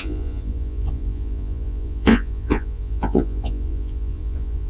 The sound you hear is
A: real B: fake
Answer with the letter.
B